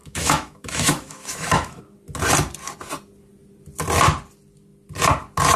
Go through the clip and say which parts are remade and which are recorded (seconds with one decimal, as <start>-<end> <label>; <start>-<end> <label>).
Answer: 0.0-1.8 remade; 1.8-5.6 recorded

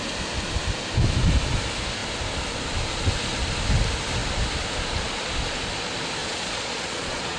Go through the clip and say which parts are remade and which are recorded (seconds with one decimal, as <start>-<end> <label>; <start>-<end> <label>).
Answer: 0.0-6.2 recorded; 6.2-7.4 remade

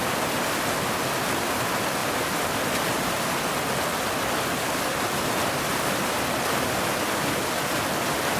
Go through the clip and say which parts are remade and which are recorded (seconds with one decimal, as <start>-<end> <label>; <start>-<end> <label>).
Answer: 0.0-8.4 recorded

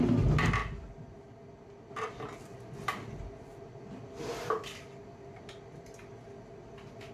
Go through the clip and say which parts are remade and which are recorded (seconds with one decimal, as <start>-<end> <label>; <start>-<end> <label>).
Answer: 0.0-7.1 recorded

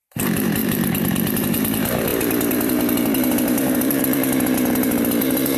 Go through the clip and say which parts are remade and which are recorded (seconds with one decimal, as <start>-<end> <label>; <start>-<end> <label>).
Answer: 0.0-5.6 remade

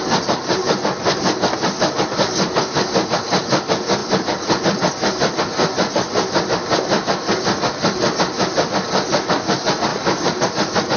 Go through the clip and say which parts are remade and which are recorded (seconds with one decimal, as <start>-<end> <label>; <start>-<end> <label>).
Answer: 0.0-9.9 recorded; 9.9-10.5 remade; 10.5-11.0 recorded

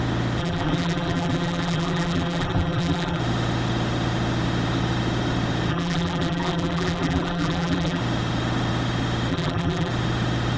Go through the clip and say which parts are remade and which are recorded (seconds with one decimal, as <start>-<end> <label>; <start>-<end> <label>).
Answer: 0.0-0.4 recorded; 0.4-3.2 remade; 3.2-5.7 recorded; 5.7-8.0 remade; 8.0-9.3 recorded; 9.3-9.9 remade; 9.9-10.6 recorded

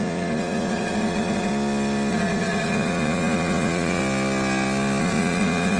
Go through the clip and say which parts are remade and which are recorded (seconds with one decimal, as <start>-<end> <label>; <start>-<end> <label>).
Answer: 0.0-1.5 remade; 1.5-2.1 recorded; 2.1-4.0 remade; 4.0-5.0 recorded; 5.0-5.8 remade